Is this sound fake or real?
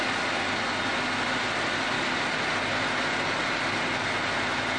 real